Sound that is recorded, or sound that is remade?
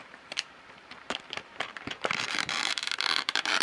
remade